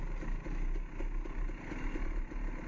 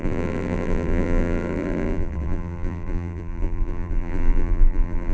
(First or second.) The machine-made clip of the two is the second